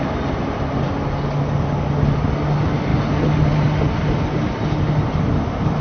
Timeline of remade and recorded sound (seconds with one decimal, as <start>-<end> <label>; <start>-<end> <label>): 0.0-5.8 recorded